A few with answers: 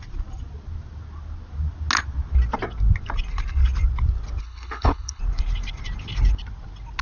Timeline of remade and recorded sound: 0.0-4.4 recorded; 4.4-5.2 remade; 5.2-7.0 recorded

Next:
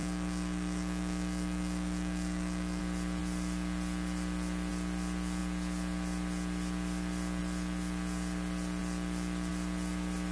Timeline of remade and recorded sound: 0.0-2.8 remade; 2.8-10.3 recorded

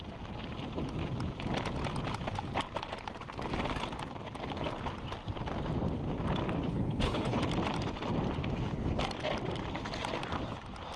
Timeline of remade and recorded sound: 0.0-6.7 recorded; 6.7-7.4 remade; 7.4-11.0 recorded

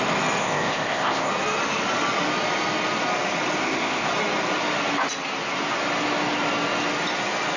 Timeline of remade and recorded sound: 0.0-0.4 recorded; 0.4-1.3 remade; 1.3-3.6 recorded; 3.6-4.1 remade; 4.1-7.6 recorded

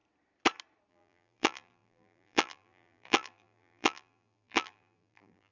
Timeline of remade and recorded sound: 0.0-0.9 recorded; 0.9-5.5 remade

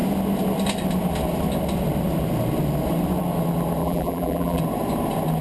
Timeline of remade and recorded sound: 0.0-3.8 recorded; 3.8-4.6 remade; 4.6-5.4 recorded

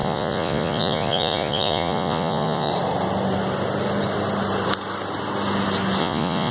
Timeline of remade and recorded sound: 0.0-2.7 remade; 2.7-6.0 recorded; 6.0-6.5 remade

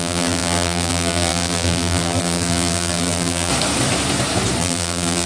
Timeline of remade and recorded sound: 0.0-3.5 remade; 3.5-4.6 recorded; 4.6-5.3 remade